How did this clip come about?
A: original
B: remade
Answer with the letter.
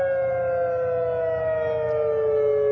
A